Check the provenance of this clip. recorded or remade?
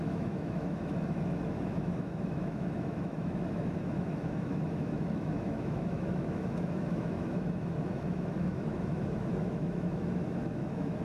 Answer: remade